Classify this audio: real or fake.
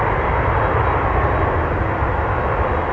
real